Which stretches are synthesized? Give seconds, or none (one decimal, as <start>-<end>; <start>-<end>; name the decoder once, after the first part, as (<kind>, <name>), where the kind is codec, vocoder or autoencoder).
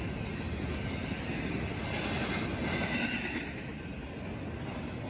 none